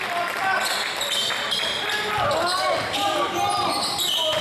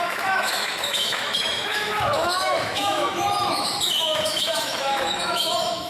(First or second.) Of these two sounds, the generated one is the second